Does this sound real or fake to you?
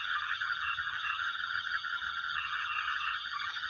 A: fake